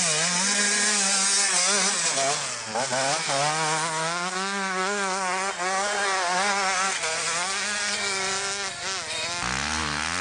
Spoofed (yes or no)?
no